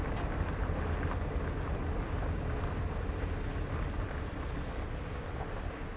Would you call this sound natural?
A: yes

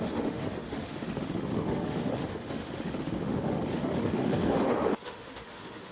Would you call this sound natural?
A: no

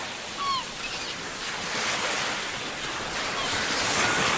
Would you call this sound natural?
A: yes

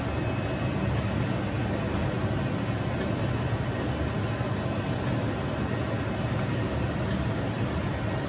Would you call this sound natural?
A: yes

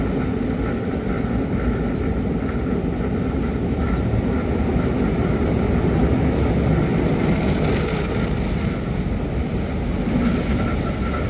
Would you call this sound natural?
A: yes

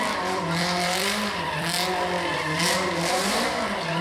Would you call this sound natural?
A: no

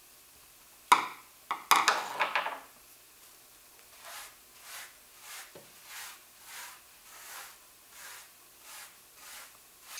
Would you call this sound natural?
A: yes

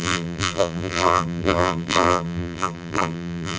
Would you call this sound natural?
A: no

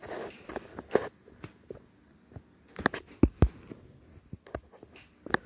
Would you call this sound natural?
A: yes